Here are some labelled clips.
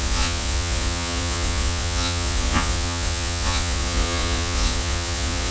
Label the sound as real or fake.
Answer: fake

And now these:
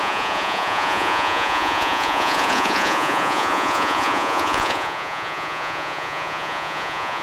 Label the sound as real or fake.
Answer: fake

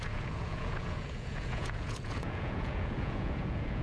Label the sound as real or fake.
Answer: fake